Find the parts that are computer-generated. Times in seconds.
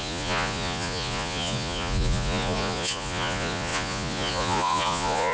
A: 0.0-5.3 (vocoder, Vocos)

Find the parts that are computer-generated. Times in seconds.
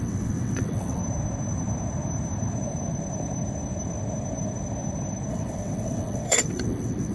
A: 0.0-1.0 (vocoder, WaveNeXt); 5.3-7.1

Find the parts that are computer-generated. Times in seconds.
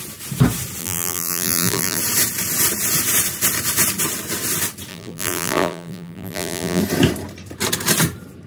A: 0.8-2.0 (vocoder, BigVGAN v2); 4.9-6.8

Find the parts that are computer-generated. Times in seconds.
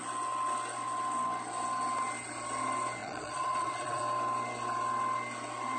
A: 3.0-4.0 (vocoder, Vocos)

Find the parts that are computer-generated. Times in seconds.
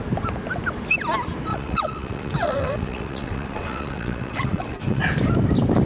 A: 1.5-5.0 (vocoder, WaveNeXt)